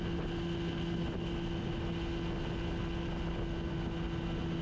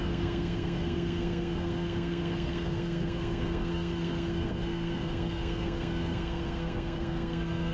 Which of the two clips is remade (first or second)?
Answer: second